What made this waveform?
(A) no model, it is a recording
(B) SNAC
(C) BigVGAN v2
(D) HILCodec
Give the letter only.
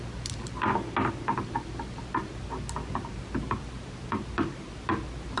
A